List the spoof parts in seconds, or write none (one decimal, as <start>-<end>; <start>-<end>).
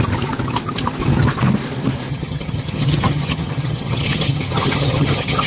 2.1-5.5